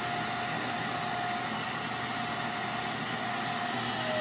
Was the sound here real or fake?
real